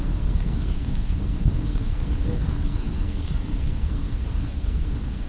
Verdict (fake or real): fake